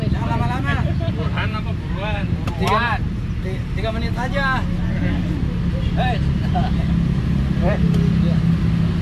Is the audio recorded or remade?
recorded